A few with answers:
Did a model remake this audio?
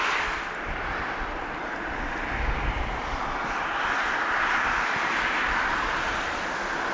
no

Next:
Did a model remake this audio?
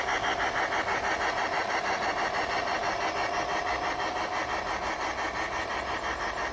no